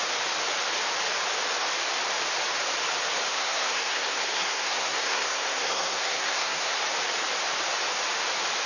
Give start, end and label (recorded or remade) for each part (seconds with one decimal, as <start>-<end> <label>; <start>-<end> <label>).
0.0-3.3 recorded; 3.3-6.8 remade; 6.8-8.7 recorded